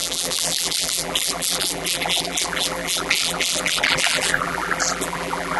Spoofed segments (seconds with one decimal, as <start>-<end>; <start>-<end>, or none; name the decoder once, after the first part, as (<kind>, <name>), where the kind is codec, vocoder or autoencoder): 0.0-5.6 (vocoder, BigVGAN v2)